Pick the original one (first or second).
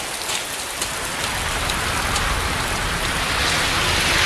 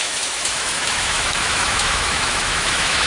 first